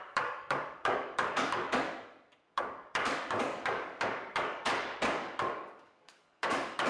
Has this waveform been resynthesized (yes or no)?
yes